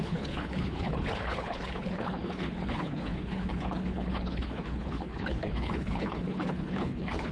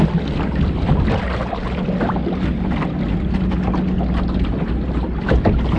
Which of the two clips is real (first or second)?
second